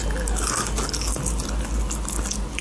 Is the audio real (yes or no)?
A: yes